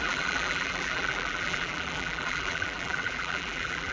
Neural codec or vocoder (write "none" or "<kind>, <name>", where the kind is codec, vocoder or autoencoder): vocoder, BigVGAN v2